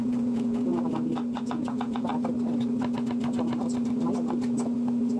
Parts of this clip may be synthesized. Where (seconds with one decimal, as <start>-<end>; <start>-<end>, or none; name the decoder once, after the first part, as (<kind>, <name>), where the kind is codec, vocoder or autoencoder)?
0.0-0.7 (vocoder, Vocos); 1.4-2.1